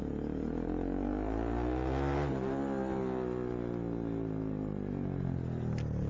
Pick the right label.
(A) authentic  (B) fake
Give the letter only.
A